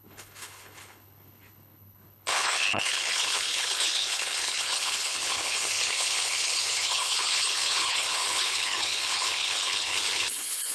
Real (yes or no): no